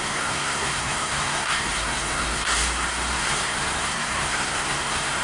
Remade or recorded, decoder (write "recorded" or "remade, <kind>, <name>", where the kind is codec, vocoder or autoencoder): remade, codec, SNAC